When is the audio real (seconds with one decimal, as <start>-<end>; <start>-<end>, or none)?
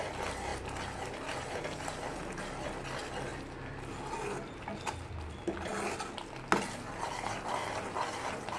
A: 0.0-8.6